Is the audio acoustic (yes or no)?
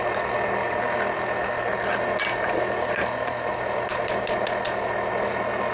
yes